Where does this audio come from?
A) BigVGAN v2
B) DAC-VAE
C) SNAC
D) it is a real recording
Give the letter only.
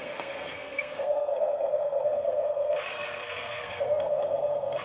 C